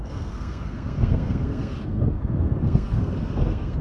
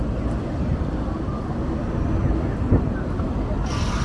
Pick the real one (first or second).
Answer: second